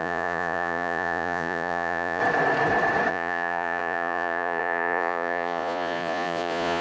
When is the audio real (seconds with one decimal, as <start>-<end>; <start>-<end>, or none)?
2.2-3.1